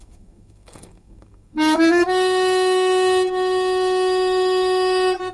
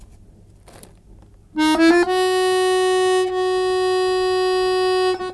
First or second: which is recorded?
second